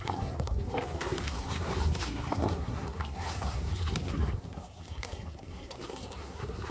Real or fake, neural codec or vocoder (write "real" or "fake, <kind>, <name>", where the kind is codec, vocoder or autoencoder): fake, codec, SNAC